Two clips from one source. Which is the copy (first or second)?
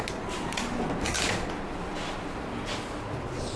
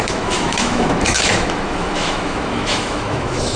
second